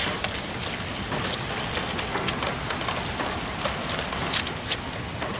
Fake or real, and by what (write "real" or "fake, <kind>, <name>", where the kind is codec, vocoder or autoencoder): real